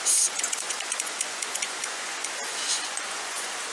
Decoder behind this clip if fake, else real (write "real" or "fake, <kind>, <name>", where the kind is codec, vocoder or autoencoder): fake, vocoder, Vocos